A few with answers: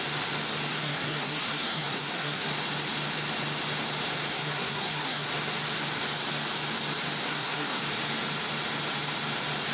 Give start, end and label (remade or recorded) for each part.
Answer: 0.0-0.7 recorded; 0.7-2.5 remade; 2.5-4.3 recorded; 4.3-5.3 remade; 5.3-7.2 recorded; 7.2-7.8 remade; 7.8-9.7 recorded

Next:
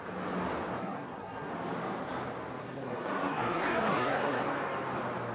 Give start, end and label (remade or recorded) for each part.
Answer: 0.0-0.8 recorded; 0.8-1.5 remade; 1.5-2.6 recorded; 2.6-4.4 remade; 4.4-5.3 recorded

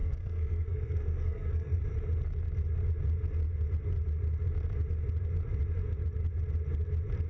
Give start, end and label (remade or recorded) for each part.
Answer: 0.0-1.8 remade; 1.8-7.3 recorded

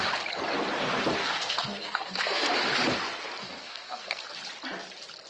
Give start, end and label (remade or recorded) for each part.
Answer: 0.0-1.2 recorded; 1.2-2.5 remade; 2.5-3.4 recorded; 3.4-4.2 remade; 4.2-5.3 recorded